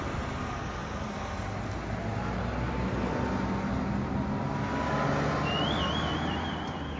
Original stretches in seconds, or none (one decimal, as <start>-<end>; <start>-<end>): 0.0-7.0